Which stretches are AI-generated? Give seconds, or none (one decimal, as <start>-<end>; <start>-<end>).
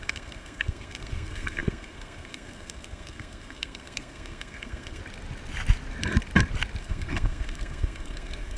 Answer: 0.0-5.0; 6.8-8.6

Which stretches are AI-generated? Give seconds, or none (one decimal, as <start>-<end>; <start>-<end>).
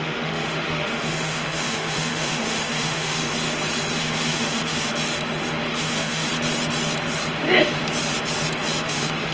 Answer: 0.0-3.2; 4.0-4.9; 5.7-6.3; 8.8-9.3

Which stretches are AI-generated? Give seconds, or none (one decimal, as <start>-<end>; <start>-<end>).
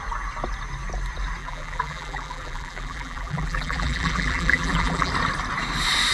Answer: 1.4-5.1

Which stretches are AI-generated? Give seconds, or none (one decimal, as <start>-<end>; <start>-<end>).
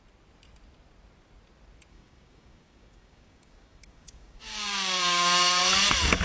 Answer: 1.9-5.6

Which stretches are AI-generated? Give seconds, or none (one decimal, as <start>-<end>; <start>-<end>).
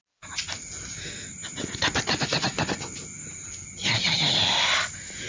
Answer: none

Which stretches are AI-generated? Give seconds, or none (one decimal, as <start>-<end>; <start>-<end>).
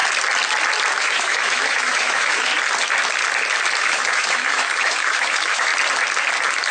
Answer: 1.0-2.5; 3.8-5.7